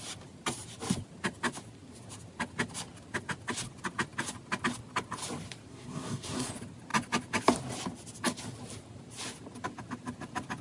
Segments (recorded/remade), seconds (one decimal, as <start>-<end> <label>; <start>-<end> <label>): 0.0-5.7 recorded; 5.7-6.5 remade; 6.5-10.6 recorded